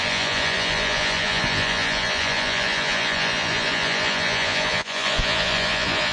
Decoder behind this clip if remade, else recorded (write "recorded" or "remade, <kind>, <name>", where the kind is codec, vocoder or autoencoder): remade, vocoder, Vocos